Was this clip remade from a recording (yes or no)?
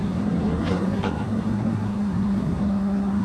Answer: yes